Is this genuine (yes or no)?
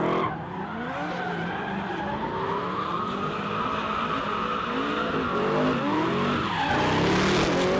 yes